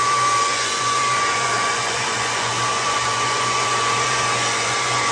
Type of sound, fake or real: fake